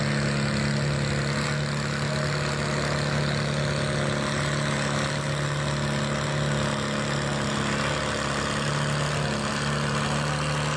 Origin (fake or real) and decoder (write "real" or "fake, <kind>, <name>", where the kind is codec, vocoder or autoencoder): real